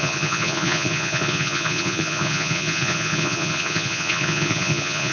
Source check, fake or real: fake